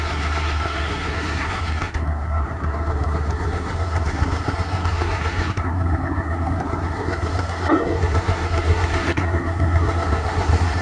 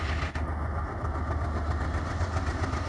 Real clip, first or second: second